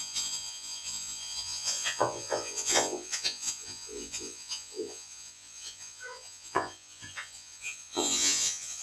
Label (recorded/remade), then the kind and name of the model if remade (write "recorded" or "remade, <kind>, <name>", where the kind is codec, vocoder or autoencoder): remade, vocoder, Vocos